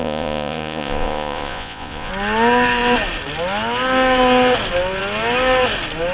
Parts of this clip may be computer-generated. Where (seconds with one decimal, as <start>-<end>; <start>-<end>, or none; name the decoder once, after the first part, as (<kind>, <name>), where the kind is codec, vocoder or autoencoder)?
0.0-2.1 (vocoder, Vocos)